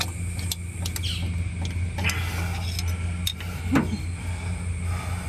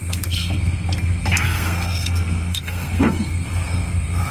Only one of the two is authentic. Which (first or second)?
first